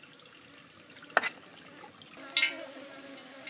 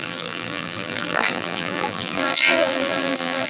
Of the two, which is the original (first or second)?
first